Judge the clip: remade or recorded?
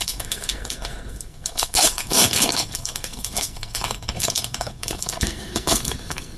remade